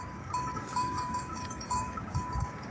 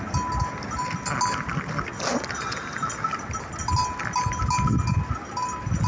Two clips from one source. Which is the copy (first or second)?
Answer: first